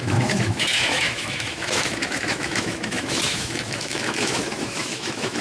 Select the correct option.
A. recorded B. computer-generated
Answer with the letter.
B